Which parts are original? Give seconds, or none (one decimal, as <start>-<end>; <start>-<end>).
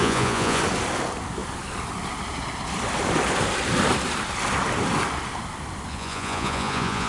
0.6-5.9